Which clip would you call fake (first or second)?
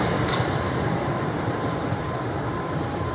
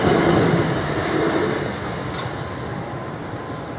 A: first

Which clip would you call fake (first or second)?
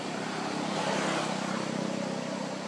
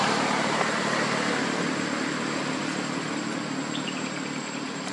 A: second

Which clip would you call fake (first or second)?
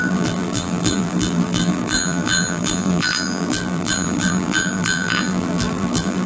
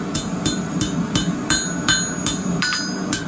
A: first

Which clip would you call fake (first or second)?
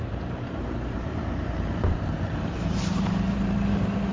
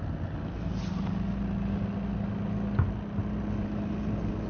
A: first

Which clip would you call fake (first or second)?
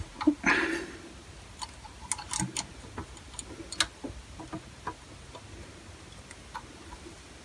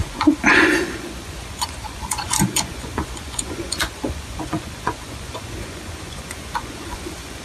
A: second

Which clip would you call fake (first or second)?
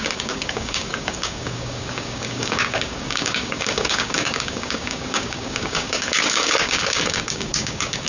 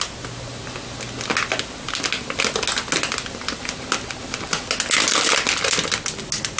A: first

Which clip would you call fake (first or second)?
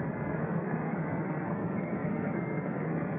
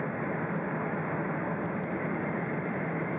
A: first